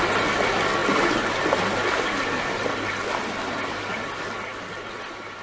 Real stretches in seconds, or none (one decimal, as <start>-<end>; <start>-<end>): 0.0-5.4